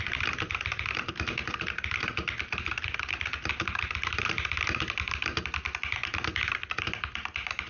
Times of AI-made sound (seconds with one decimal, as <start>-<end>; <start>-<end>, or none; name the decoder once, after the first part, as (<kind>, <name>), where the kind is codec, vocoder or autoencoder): none